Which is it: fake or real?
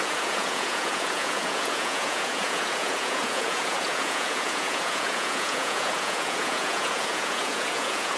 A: fake